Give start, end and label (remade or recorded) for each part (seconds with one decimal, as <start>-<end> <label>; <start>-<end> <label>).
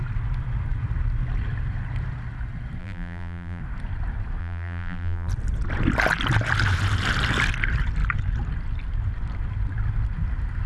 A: 0.0-2.8 recorded; 2.8-3.6 remade; 3.6-4.4 recorded; 4.4-5.3 remade; 5.3-10.7 recorded